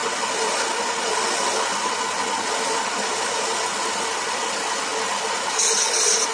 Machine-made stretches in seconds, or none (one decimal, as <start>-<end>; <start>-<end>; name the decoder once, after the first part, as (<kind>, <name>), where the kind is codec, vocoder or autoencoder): 4.9-5.6 (vocoder, BigVGAN v2)